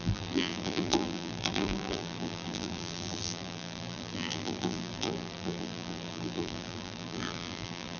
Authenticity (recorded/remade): remade